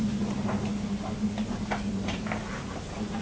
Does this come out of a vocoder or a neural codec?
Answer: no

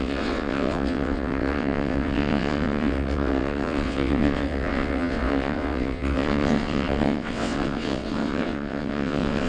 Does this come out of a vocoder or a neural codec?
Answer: yes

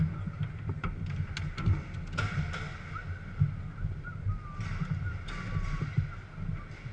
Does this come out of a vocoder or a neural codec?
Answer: no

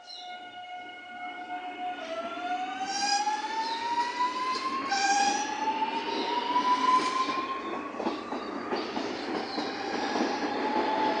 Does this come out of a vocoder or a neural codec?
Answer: no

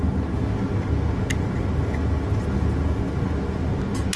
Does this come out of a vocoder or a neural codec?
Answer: no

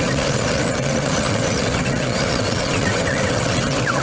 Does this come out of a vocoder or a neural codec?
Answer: yes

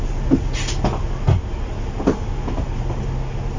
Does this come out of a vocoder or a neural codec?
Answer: no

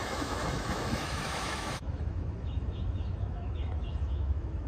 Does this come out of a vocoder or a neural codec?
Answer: yes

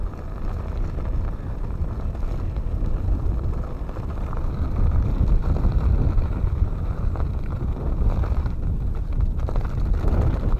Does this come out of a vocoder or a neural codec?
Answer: no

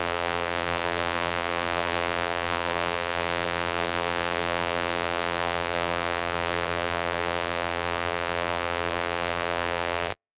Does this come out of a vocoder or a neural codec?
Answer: yes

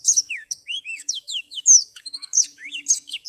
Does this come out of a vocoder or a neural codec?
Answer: yes